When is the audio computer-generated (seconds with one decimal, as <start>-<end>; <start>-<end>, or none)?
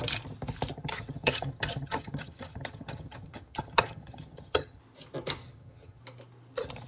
0.7-4.8; 5.4-6.0